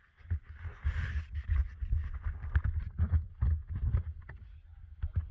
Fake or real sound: real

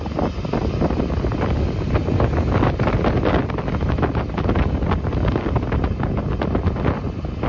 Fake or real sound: real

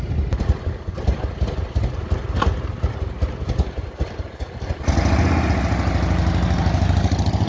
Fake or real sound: real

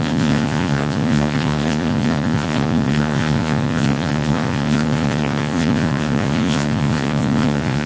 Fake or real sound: fake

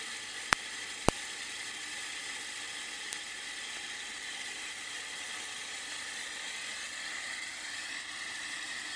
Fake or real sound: real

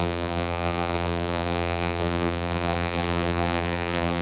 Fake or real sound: fake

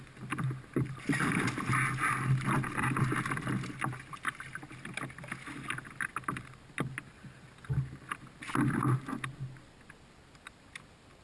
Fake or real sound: real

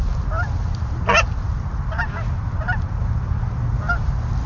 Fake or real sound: real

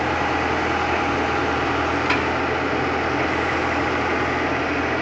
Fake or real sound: real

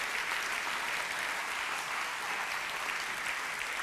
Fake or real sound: real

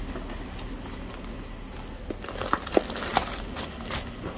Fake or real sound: real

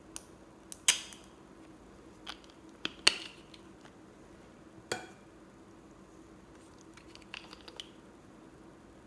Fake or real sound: real